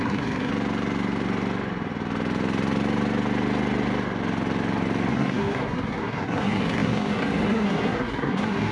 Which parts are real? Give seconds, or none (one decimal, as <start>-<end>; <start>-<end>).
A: 0.5-5.1